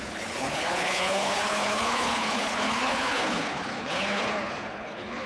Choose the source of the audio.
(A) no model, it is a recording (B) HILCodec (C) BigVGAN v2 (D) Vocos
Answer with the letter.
B